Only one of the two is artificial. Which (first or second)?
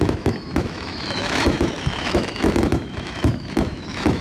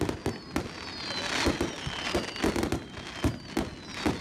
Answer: first